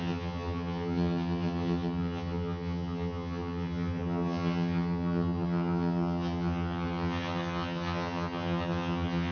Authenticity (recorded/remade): remade